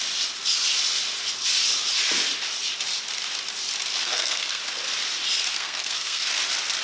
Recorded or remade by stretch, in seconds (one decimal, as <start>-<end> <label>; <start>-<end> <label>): 0.0-4.0 recorded; 4.0-4.6 remade; 4.6-5.5 recorded; 5.5-6.2 remade; 6.2-6.8 recorded